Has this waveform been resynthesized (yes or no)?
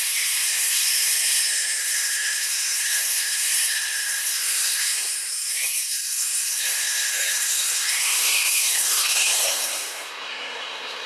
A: yes